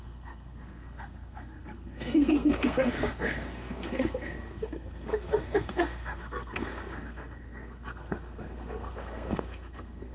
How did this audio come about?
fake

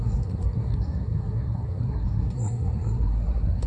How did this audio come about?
fake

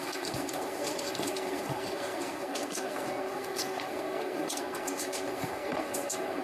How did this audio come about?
fake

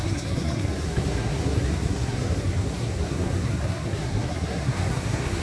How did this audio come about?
fake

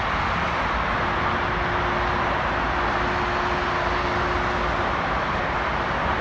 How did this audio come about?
real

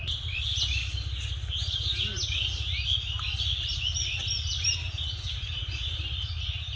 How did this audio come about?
real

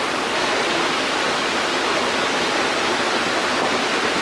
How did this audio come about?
real